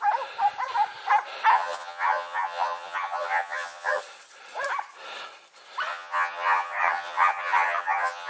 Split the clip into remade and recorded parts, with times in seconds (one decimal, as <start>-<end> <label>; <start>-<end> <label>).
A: 0.0-1.5 recorded; 1.5-4.0 remade; 4.0-5.9 recorded; 5.9-8.3 remade